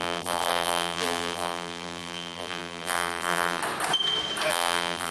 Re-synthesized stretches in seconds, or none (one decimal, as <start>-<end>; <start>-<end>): 0.0-3.6; 4.5-5.1